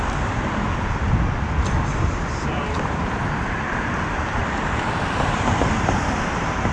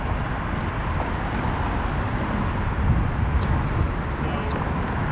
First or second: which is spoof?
first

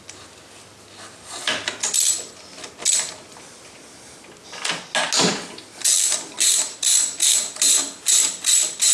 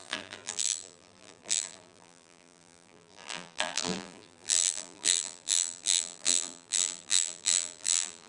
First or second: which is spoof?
second